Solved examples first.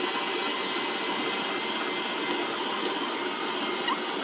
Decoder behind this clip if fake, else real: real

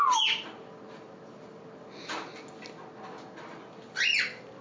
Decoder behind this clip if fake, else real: real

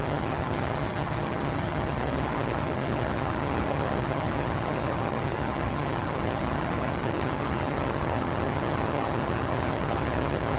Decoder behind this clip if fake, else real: fake, vocoder, HiFi-GAN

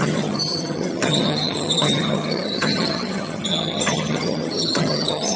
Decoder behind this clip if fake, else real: fake, vocoder, HiFi-GAN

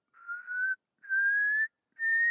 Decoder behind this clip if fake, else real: real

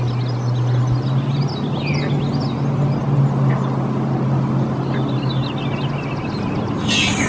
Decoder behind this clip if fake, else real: real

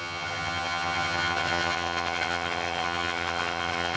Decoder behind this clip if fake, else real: fake, vocoder, HiFi-GAN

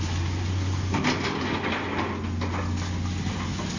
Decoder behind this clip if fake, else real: real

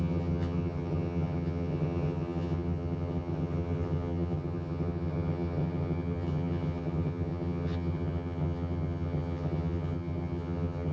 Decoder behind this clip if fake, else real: fake, vocoder, HiFi-GAN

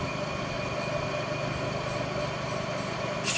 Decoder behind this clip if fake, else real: real